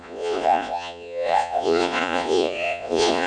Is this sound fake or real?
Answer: fake